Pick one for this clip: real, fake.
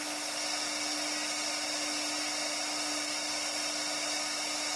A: real